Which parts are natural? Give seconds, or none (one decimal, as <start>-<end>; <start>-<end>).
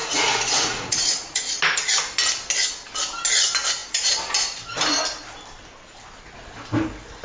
1.4-7.2